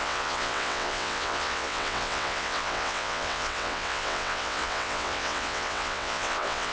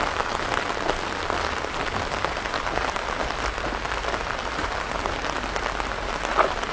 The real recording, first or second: second